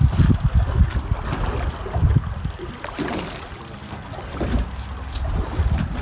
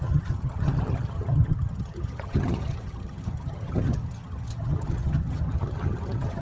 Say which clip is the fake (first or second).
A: second